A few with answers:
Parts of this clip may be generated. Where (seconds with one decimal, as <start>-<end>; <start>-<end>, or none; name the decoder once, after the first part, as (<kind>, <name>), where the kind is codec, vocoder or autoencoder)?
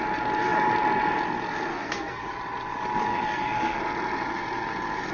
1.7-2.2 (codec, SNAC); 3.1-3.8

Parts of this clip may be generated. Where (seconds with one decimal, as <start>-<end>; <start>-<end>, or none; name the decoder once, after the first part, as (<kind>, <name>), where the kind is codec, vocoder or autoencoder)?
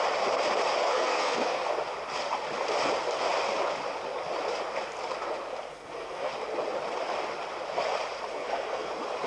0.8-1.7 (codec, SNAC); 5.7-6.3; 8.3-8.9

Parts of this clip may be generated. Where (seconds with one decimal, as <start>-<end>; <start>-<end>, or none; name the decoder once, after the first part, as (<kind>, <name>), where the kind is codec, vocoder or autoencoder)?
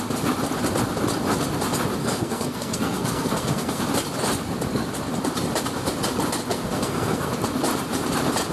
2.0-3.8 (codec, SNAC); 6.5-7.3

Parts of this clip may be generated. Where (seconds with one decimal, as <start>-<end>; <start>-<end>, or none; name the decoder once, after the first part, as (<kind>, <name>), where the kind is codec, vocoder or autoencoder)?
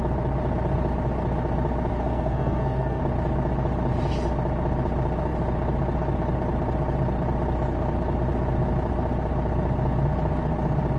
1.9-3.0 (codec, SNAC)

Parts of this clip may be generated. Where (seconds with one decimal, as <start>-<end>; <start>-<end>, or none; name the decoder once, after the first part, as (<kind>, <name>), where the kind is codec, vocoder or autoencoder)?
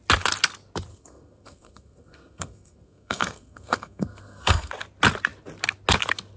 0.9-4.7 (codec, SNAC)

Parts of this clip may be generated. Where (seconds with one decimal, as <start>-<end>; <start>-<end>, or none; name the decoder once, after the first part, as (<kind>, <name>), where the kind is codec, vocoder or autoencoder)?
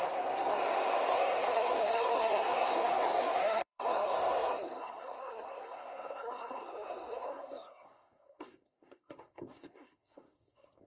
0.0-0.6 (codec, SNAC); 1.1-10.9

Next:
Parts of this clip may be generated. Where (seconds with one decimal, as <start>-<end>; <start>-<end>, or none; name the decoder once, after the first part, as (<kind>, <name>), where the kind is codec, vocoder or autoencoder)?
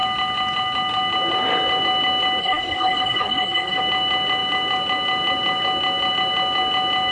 2.4-3.8 (codec, SNAC)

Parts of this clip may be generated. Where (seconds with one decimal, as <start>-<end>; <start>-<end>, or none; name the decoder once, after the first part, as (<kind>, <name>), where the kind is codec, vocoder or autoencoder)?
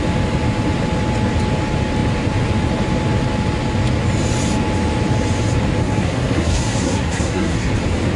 5.8-7.7 (codec, SNAC)